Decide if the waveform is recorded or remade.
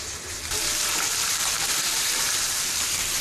remade